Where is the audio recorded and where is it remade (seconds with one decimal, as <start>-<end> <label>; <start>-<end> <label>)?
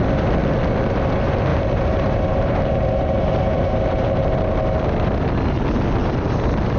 0.0-1.5 recorded; 1.5-4.3 remade; 4.3-6.0 recorded; 6.0-6.8 remade